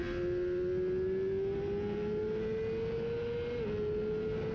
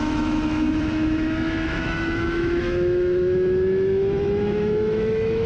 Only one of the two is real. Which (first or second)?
first